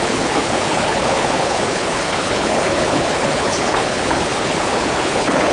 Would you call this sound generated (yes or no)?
yes